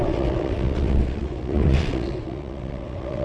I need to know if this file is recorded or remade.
remade